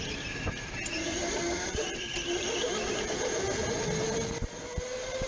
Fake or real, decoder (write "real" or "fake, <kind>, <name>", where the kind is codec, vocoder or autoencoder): real